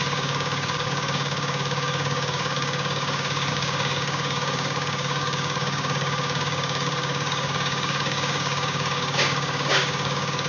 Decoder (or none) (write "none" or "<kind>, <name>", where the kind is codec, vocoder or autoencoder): codec, DAC